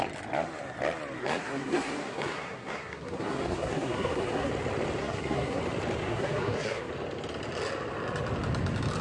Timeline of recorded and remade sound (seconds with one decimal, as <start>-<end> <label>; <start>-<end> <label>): 0.0-1.2 recorded; 1.2-4.5 remade; 4.5-5.0 recorded; 5.0-5.6 remade; 5.6-6.0 recorded; 6.0-6.9 remade; 6.9-9.0 recorded